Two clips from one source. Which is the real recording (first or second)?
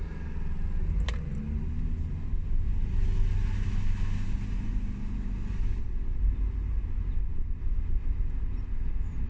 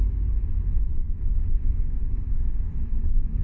first